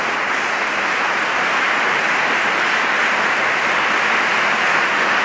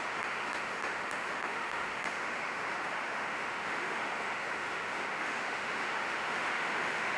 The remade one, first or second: second